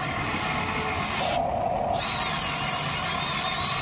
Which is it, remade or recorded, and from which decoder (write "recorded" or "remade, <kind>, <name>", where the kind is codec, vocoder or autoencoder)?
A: recorded